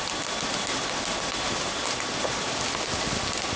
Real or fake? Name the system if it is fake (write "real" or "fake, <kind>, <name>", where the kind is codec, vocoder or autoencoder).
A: real